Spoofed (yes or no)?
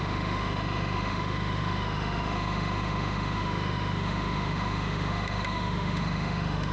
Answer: yes